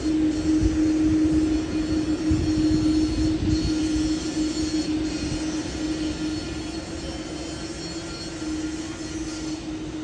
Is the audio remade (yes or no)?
no